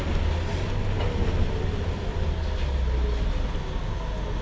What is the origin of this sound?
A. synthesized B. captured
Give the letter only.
B